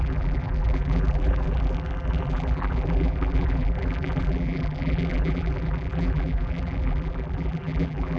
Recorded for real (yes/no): no